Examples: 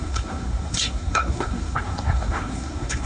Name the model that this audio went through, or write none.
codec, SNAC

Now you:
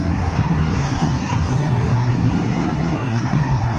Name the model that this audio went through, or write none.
codec, SNAC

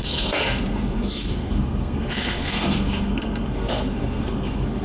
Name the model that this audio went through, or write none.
codec, SNAC